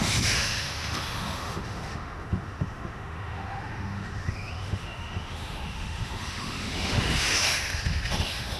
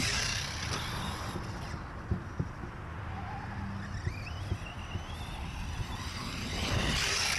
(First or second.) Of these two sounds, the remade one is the first